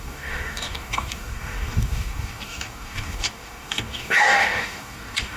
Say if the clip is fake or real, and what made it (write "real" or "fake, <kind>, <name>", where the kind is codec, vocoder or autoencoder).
fake, codec, DAC